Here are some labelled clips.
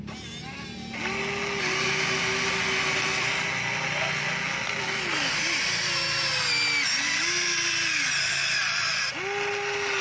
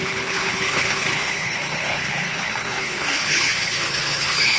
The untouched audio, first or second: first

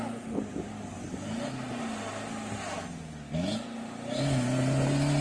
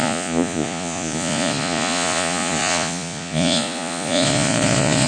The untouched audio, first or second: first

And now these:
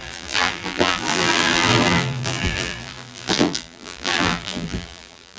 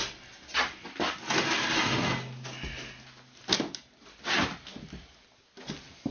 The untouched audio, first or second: second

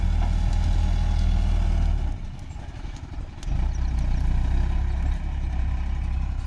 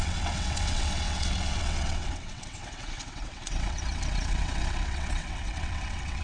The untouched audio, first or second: first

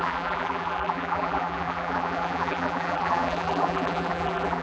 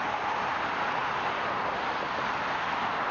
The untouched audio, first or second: second